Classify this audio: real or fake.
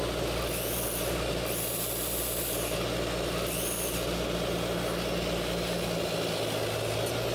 real